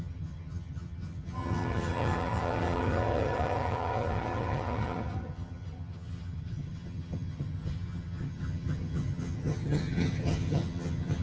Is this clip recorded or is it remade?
remade